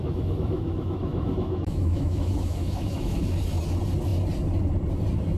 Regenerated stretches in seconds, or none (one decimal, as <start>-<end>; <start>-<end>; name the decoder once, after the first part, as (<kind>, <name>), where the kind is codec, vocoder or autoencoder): 0.0-3.2 (autoencoder, DAC-VAE)